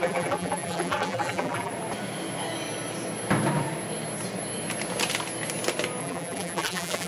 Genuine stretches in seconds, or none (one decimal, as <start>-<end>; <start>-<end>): 1.7-6.0